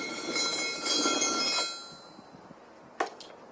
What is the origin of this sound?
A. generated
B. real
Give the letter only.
B